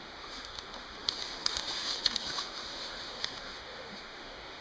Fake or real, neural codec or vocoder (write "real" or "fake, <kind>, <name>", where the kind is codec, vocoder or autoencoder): fake, autoencoder, DAC-VAE